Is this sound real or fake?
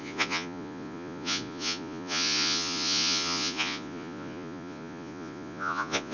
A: fake